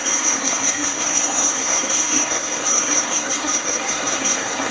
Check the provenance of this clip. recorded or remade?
remade